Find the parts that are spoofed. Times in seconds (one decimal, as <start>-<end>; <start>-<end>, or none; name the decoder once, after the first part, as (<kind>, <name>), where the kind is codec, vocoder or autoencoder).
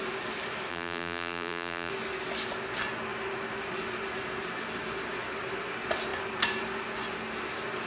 0.7-1.9 (vocoder, BigVGAN v2)